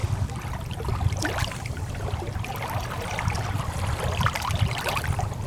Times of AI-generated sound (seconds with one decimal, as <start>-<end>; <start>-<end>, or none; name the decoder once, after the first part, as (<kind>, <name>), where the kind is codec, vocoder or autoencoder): none